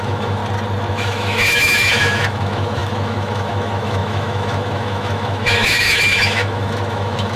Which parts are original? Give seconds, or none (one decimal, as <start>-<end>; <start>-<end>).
0.4-0.9